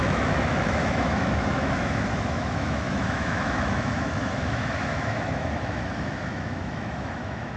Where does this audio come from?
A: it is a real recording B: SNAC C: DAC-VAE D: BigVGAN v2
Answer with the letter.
C